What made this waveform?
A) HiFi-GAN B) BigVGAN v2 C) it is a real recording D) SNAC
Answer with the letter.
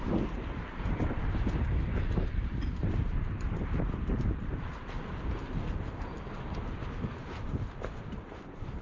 B